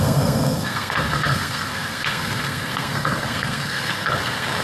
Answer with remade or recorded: remade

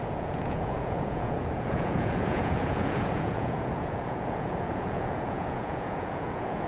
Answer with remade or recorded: remade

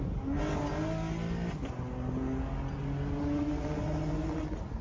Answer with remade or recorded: recorded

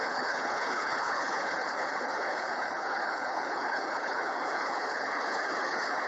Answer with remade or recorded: remade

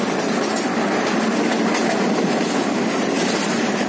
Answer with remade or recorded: recorded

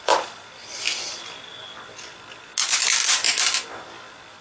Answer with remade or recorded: recorded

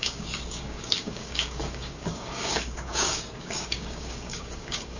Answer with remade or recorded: remade